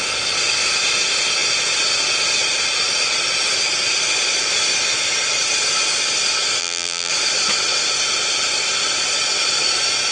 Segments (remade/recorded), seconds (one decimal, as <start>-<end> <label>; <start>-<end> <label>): 0.0-6.6 recorded; 6.6-7.1 remade; 7.1-10.1 recorded